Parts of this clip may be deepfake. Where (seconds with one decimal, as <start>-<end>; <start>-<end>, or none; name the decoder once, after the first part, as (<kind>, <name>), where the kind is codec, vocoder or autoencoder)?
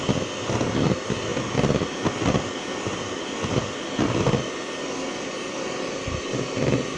none